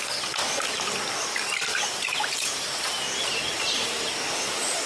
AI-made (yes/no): no